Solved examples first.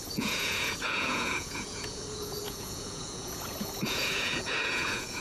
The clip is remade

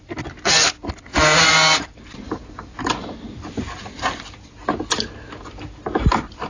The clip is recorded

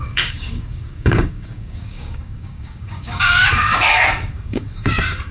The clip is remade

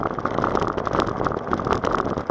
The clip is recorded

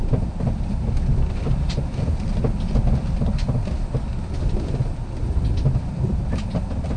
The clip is recorded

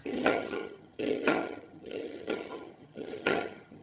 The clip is remade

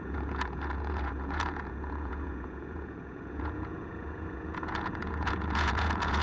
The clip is remade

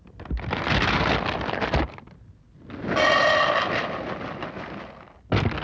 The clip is recorded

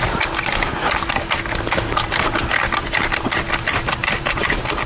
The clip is recorded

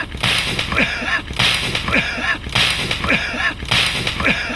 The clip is recorded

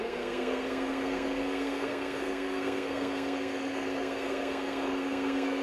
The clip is remade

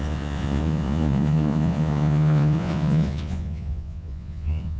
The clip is remade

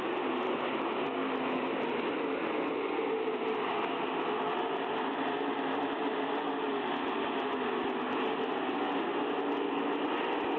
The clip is recorded